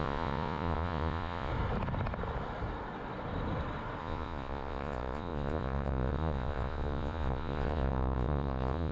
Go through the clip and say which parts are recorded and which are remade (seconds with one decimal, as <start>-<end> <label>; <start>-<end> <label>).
0.0-1.5 remade; 1.5-4.0 recorded; 4.0-8.9 remade